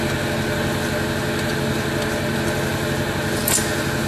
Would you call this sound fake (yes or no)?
no